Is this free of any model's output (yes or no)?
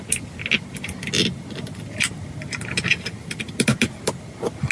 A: yes